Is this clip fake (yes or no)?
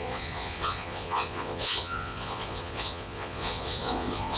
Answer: yes